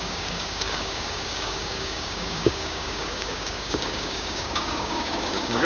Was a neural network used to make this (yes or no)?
yes